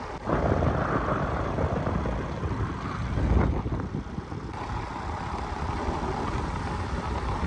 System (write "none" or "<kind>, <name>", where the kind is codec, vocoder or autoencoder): none